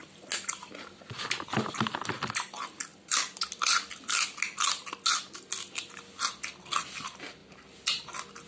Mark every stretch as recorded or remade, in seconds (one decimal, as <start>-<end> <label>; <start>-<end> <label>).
0.0-8.5 recorded